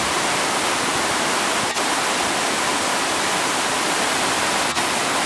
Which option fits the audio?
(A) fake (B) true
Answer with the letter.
B